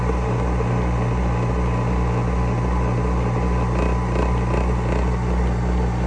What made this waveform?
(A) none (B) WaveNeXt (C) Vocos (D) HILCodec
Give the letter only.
A